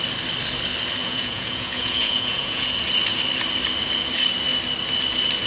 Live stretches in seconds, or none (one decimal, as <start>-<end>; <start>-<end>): 0.0-1.0; 2.7-5.5